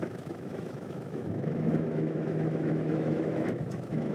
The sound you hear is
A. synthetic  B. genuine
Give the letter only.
A